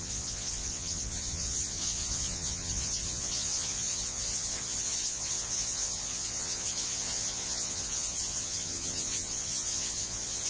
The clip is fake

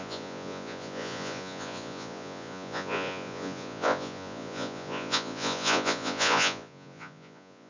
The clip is fake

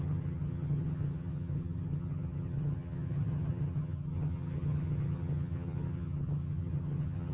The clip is fake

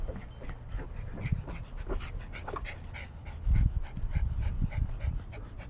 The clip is real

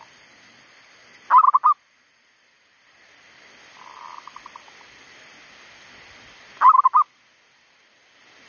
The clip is real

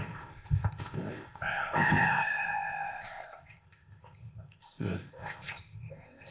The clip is fake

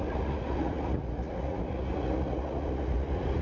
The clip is fake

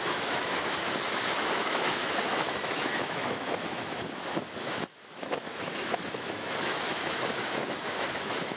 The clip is fake